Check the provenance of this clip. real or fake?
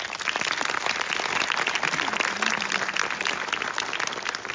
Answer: real